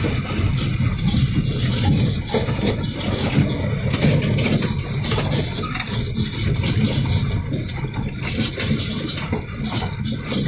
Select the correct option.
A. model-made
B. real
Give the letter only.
B